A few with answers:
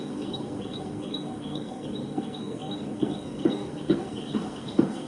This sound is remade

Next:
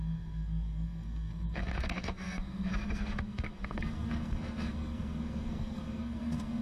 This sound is remade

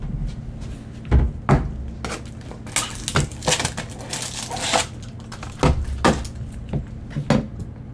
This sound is recorded